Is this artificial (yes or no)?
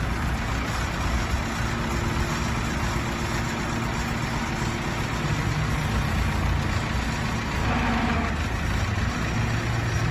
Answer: no